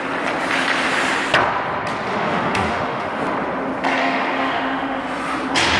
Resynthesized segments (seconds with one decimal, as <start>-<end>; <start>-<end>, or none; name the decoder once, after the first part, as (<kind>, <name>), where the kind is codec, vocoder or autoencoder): 2.1-3.2 (autoencoder, DAC-VAE); 4.0-5.0